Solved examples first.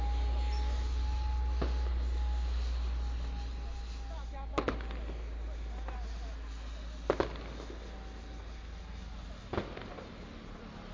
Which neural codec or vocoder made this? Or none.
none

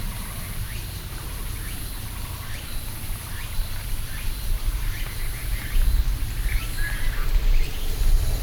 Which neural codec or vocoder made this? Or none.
none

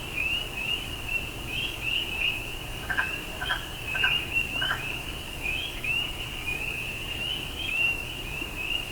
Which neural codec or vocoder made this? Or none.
codec, DAC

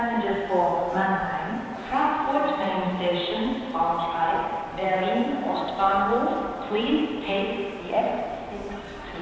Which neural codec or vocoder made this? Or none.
none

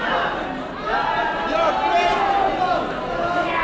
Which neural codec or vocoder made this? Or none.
none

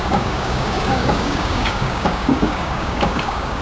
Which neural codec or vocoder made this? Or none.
codec, DAC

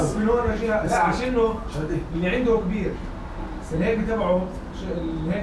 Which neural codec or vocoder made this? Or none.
none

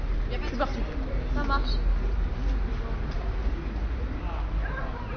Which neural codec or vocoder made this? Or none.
none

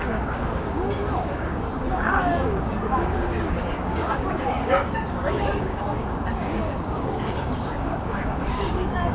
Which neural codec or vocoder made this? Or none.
codec, DAC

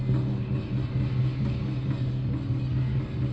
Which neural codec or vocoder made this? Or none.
none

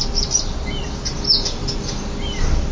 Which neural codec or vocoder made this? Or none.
none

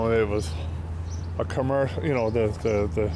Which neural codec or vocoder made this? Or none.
none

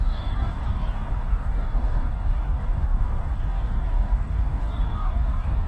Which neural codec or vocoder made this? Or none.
codec, DAC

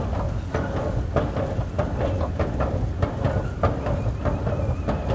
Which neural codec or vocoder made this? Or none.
none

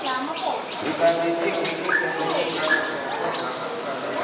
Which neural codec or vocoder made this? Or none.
none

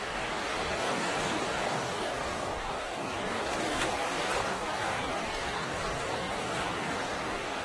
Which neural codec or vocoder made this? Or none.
codec, DAC